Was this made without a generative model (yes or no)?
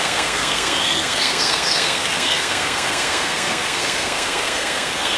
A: no